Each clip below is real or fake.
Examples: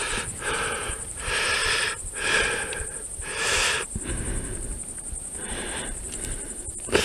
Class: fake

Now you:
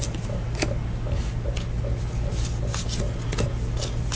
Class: real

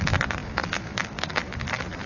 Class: fake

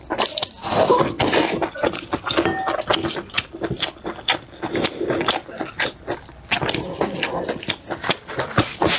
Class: real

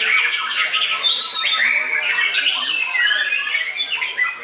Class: real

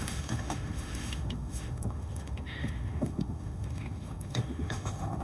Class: fake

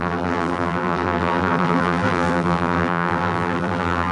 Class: fake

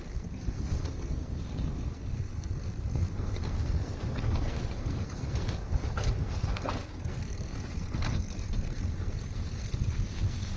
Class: fake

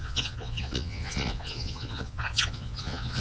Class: fake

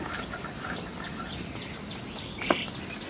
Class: real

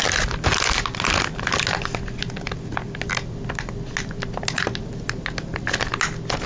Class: real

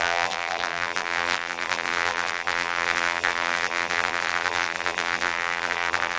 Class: fake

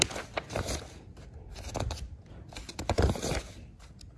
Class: real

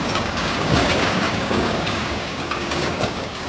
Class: fake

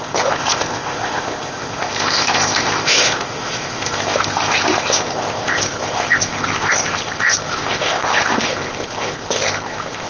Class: fake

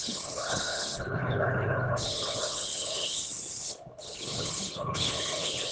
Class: fake